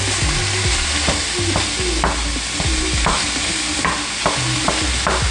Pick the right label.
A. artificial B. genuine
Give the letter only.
B